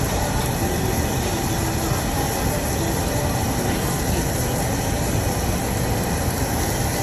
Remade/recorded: recorded